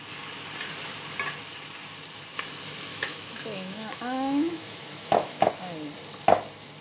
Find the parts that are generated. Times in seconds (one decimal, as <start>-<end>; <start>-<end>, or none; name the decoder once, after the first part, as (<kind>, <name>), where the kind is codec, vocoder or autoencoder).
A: 2.9-5.5 (autoencoder, DAC-VAE)